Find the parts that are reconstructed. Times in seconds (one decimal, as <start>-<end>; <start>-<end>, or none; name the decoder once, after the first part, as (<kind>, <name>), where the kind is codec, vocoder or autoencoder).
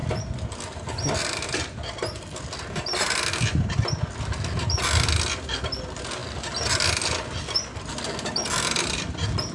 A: none